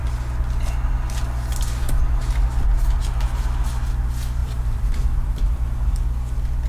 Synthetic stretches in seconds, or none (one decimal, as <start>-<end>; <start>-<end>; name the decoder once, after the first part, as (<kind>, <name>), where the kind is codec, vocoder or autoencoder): 4.4-6.0 (vocoder, BigVGAN v2)